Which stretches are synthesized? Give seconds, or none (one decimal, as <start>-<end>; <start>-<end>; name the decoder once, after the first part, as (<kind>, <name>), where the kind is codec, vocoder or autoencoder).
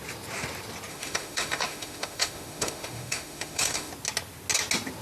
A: 0.9-3.9 (autoencoder, DAC-VAE)